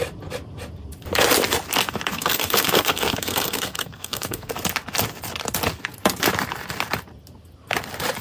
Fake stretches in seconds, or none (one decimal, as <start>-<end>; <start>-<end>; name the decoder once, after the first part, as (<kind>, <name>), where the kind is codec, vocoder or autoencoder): 2.1-4.5 (codec, SNAC)